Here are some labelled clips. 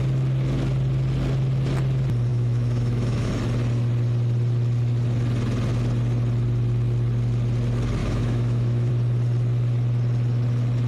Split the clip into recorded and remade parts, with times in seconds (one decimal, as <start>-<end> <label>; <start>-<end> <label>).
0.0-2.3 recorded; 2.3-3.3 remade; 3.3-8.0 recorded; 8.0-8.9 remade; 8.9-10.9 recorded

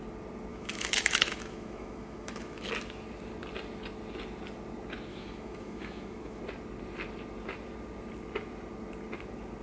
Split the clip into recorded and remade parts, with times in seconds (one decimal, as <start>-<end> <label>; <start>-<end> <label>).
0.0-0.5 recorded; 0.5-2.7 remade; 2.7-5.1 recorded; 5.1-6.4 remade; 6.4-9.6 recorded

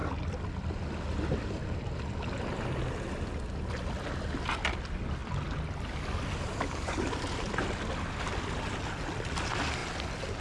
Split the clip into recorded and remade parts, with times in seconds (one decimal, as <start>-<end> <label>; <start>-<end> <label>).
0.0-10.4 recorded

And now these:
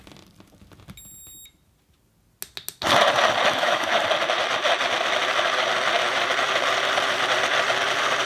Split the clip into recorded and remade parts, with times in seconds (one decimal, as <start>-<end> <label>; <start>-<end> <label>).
0.0-3.5 recorded; 3.5-4.0 remade; 4.0-8.3 recorded

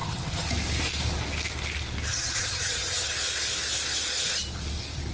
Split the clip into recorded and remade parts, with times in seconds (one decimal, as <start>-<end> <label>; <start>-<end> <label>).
0.0-0.5 remade; 0.5-2.1 recorded; 2.1-3.1 remade; 3.1-5.1 recorded

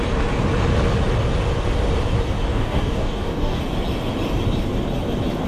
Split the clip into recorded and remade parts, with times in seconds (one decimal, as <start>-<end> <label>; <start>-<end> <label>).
0.0-2.5 recorded; 2.5-3.6 remade; 3.6-5.5 recorded

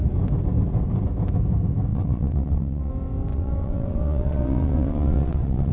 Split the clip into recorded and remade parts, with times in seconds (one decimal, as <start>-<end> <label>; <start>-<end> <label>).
0.0-1.9 recorded; 1.9-2.9 remade; 2.9-3.3 recorded; 3.3-5.7 remade

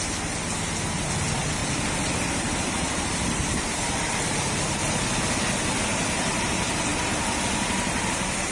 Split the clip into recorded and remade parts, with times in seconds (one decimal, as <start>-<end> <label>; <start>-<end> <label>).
0.0-1.6 recorded; 1.6-5.0 remade; 5.0-8.5 recorded